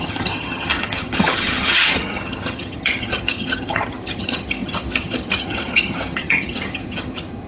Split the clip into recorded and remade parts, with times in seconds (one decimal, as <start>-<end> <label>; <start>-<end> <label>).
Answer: 0.0-7.5 remade

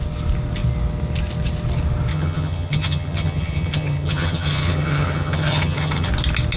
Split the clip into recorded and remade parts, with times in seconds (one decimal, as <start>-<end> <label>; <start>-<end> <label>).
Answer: 0.0-2.1 recorded; 2.1-6.1 remade; 6.1-6.6 recorded

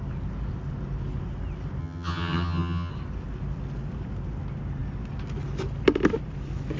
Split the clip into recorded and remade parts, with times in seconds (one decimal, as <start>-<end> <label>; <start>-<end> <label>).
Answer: 0.0-1.8 recorded; 1.8-2.9 remade; 2.9-6.8 recorded

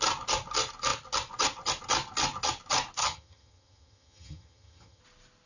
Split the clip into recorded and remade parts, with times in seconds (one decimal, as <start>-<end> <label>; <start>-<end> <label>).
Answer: 0.0-3.0 recorded; 3.0-5.0 remade; 5.0-5.5 recorded

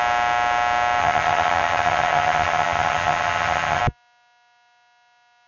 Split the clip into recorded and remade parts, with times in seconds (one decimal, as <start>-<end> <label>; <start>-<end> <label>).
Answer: 0.0-1.0 recorded; 1.0-3.8 remade; 3.8-5.5 recorded

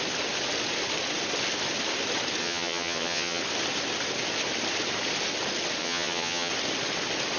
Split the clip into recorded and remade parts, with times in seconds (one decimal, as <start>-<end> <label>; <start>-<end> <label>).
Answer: 0.0-2.4 recorded; 2.4-3.4 remade; 3.4-5.8 recorded; 5.8-6.5 remade; 6.5-7.4 recorded

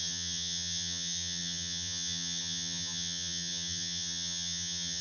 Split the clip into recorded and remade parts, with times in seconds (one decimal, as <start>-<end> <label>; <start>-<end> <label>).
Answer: 0.0-5.0 remade

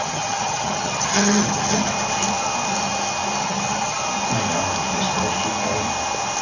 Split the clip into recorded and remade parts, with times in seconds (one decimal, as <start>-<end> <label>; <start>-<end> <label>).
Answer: 0.0-1.9 remade; 1.9-3.4 recorded; 3.4-4.0 remade; 4.0-6.4 recorded